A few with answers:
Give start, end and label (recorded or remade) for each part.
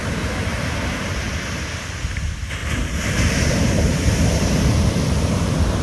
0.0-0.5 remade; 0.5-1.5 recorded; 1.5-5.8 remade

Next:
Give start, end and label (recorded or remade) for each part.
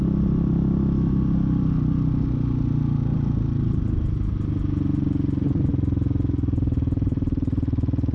0.0-3.1 recorded; 3.1-3.8 remade; 3.8-8.1 recorded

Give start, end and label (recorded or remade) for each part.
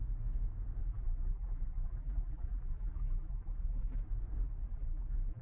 0.0-0.8 recorded; 0.8-4.0 remade; 4.0-4.7 recorded; 4.7-5.4 remade